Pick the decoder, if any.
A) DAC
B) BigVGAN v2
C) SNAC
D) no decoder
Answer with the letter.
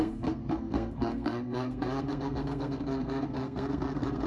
C